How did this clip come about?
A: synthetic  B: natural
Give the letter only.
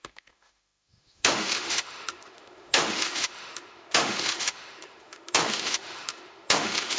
A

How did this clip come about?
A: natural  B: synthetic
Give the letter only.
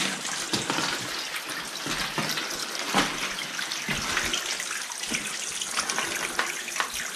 A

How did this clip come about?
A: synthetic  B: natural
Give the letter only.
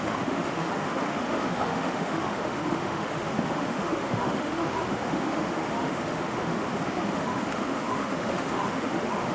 A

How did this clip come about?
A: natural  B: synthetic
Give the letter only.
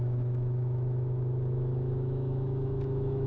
B